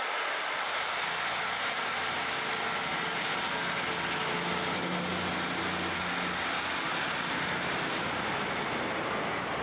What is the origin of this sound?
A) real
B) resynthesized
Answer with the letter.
A